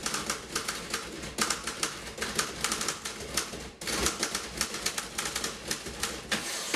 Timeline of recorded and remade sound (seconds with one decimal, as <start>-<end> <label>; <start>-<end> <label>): 0.0-6.8 recorded